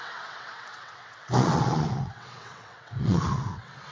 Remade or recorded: remade